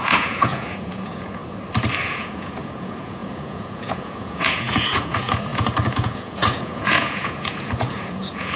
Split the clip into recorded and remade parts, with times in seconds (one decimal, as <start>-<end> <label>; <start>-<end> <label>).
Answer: 0.0-1.4 remade; 1.4-2.1 recorded; 2.1-8.6 remade